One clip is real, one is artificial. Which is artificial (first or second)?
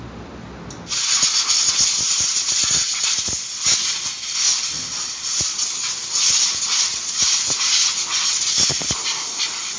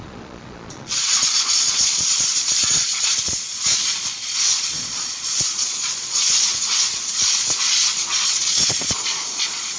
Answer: second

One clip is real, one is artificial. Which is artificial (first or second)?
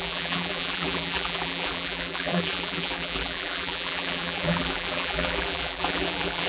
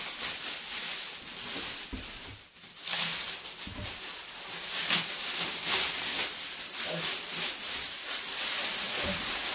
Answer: first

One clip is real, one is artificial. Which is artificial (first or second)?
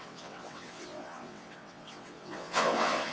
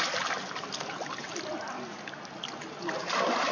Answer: first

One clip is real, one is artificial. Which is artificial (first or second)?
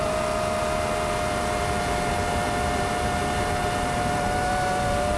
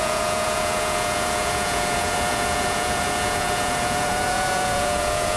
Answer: second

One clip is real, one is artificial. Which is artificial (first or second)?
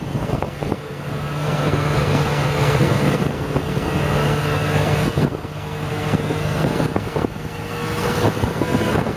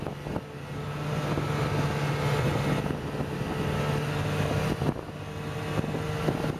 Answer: first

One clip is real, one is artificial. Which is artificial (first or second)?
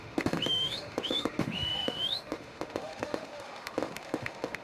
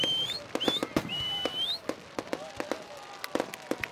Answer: first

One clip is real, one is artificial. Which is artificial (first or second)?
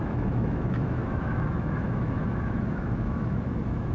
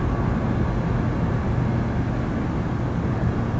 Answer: first